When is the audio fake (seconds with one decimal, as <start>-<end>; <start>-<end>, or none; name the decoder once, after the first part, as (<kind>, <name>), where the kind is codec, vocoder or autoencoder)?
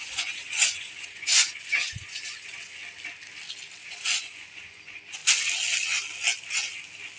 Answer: 0.0-2.8 (vocoder, Vocos); 3.8-5.2